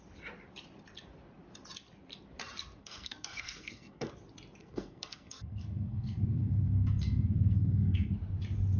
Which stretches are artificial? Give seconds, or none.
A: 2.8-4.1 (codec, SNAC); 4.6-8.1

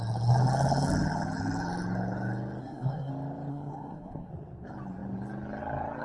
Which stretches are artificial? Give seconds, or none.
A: 2.6-3.1 (codec, SNAC); 3.5-4.3

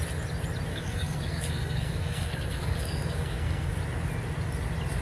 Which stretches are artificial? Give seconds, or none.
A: 0.7-3.7 (codec, SNAC)

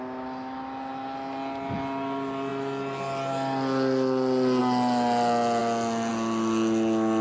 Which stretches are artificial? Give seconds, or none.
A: none

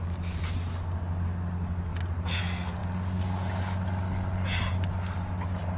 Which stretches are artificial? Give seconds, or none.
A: none

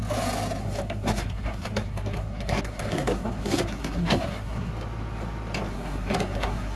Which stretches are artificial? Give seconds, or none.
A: 0.6-4.7 (codec, SNAC); 5.7-6.8

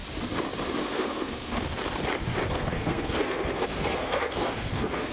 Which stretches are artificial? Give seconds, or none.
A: 0.8-1.8 (codec, SNAC); 2.5-5.1

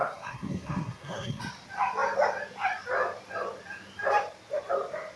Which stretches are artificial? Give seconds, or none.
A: 0.0-1.4 (codec, SNAC)